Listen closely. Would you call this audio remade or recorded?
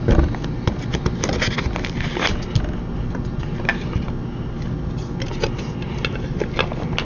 recorded